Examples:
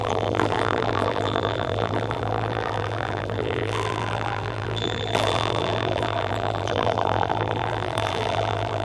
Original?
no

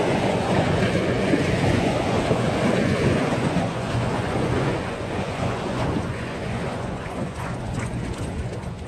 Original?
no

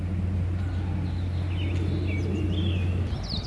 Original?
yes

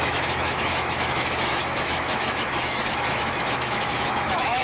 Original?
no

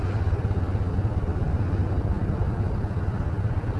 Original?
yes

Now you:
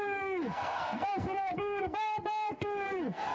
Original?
no